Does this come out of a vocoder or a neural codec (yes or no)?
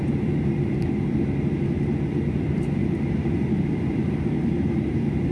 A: yes